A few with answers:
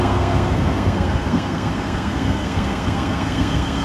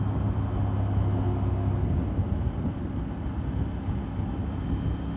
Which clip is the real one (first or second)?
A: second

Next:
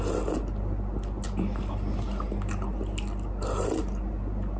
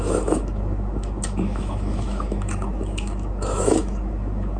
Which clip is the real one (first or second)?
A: first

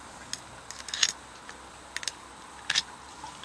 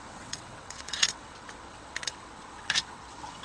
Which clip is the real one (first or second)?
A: first